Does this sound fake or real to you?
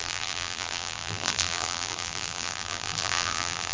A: fake